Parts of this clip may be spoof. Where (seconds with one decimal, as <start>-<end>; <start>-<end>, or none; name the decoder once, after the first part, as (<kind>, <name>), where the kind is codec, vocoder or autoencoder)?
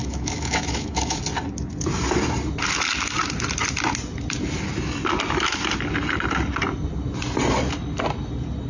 0.0-1.2 (autoencoder, DAC-VAE)